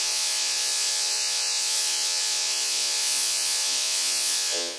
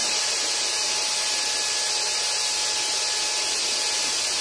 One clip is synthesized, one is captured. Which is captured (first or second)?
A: second